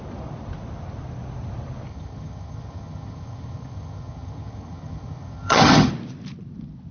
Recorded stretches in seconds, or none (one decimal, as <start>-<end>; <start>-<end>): 0.0-1.9; 5.9-6.9